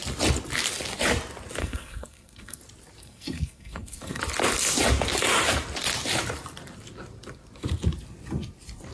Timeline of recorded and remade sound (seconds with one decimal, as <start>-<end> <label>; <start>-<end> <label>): 0.0-1.6 recorded; 1.6-2.6 remade; 2.6-3.0 recorded; 3.0-4.2 remade; 4.2-8.9 recorded